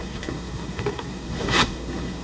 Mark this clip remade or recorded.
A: remade